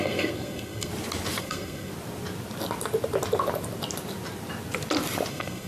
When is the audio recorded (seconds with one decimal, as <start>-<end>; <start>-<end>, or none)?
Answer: 0.9-1.4; 1.9-5.3